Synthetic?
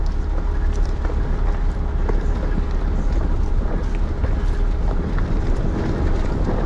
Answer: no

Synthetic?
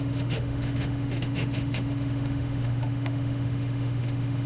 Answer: yes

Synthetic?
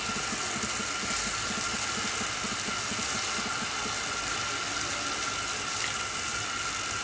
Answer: no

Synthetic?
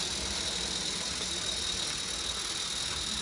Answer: no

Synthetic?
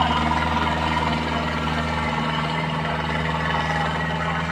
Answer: no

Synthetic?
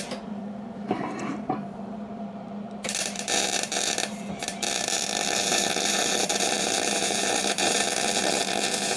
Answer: yes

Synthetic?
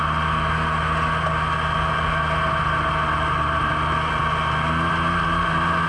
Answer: no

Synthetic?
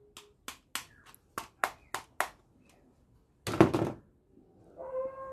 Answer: no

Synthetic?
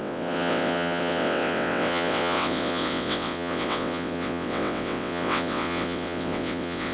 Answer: yes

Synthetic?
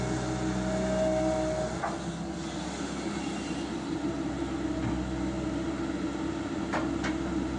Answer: no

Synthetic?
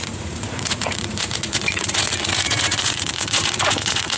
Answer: yes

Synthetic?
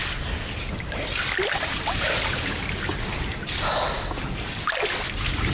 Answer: no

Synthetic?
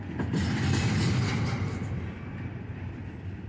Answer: no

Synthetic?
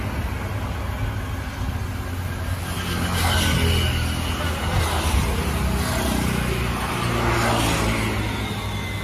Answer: no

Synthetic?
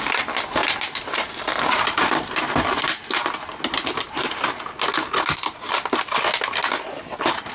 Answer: no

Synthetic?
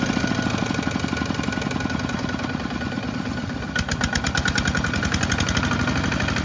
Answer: no